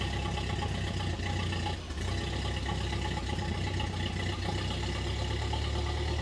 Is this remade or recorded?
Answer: recorded